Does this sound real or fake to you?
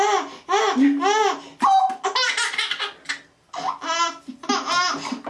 real